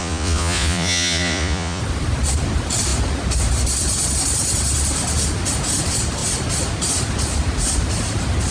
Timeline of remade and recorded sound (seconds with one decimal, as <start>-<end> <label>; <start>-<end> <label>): 0.0-1.8 remade; 1.8-8.5 recorded